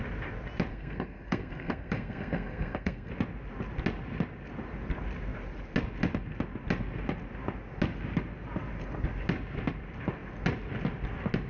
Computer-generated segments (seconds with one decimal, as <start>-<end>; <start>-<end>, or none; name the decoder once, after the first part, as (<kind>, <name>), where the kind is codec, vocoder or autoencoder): 0.7-3.1 (codec, SNAC)